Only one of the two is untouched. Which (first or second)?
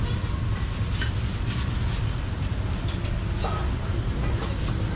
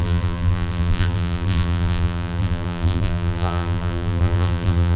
first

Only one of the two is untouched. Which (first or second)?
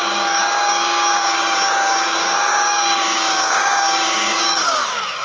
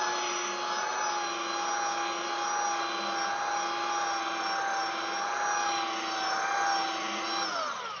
second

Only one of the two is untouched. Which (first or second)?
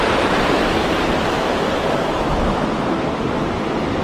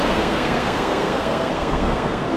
first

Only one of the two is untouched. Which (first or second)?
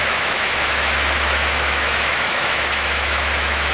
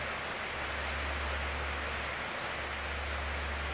second